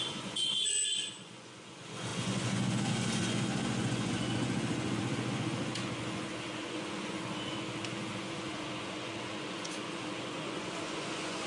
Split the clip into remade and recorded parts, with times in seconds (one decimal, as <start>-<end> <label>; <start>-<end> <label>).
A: 0.0-11.5 remade

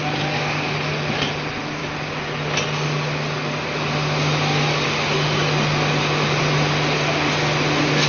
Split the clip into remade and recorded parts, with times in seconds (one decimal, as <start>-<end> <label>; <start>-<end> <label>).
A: 0.0-8.1 recorded

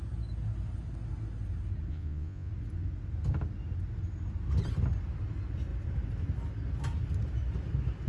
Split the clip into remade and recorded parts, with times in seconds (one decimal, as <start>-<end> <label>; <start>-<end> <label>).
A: 0.0-1.9 recorded; 1.9-2.5 remade; 2.5-8.1 recorded

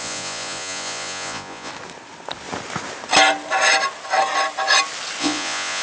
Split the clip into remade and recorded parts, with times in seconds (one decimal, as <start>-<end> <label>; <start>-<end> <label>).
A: 0.0-1.7 remade; 1.7-5.2 recorded; 5.2-5.8 remade

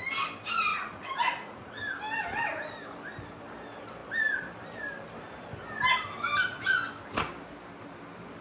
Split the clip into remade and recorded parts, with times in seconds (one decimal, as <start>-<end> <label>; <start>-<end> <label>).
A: 0.0-0.7 recorded; 0.7-1.8 remade; 1.8-8.4 recorded